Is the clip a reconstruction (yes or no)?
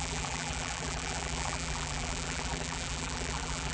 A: yes